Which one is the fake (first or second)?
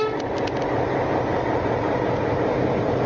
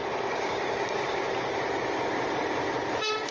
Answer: second